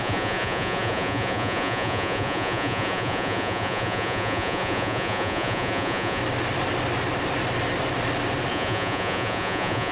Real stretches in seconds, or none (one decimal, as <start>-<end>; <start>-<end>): 6.2-8.5